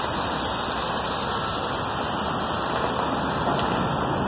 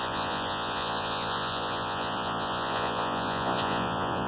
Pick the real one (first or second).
first